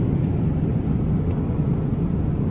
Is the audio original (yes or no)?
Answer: yes